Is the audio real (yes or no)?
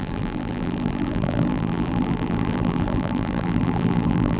no